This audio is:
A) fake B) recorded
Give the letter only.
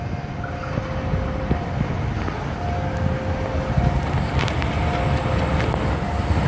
A